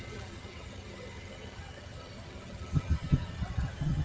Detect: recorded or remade remade